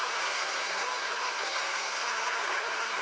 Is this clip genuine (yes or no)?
no